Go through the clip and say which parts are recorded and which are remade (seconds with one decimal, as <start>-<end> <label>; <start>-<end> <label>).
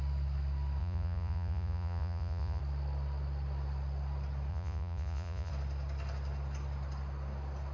0.0-0.8 recorded; 0.8-2.6 remade; 2.6-4.5 recorded; 4.5-5.5 remade; 5.5-7.7 recorded